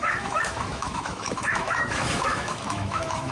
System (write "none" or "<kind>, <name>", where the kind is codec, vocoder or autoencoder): autoencoder, DAC-VAE